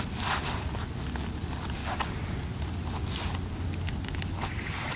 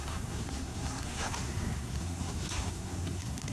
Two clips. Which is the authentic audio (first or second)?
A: first